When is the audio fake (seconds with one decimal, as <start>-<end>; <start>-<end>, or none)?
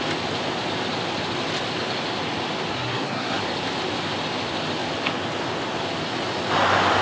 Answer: 2.7-3.4